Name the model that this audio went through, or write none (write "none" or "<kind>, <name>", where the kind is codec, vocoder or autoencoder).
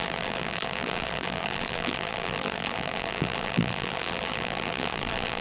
vocoder, BigVGAN v2